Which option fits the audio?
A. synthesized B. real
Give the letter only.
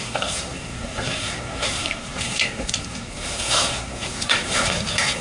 A